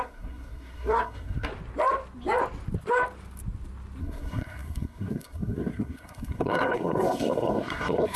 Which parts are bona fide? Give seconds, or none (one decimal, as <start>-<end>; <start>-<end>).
1.5-4.0